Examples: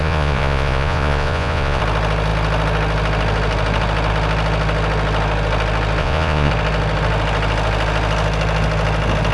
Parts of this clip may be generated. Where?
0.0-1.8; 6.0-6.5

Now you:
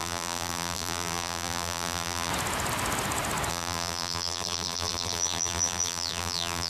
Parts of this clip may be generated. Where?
0.0-2.3; 3.5-6.7

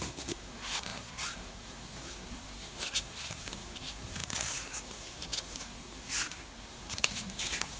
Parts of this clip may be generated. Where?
0.0-7.8

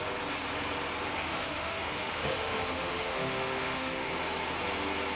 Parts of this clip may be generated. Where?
1.1-4.1